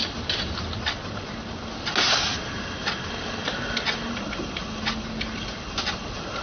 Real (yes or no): yes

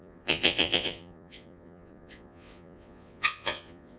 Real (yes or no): no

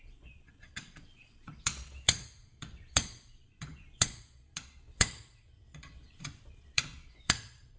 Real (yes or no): no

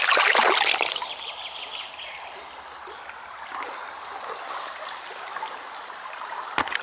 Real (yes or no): yes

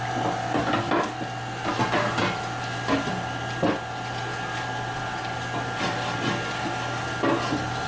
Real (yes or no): yes